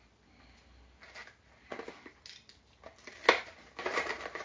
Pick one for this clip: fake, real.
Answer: real